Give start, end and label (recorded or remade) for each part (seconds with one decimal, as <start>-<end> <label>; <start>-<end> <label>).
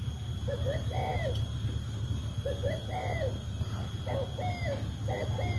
0.0-5.6 recorded